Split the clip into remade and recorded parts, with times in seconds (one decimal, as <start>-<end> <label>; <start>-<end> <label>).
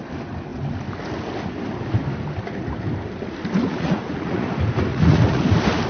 0.0-3.6 recorded; 3.6-4.5 remade; 4.5-4.9 recorded; 4.9-5.4 remade; 5.4-5.9 recorded